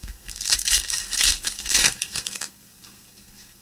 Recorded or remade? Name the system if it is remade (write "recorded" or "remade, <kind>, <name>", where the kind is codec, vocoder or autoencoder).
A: remade, codec, SNAC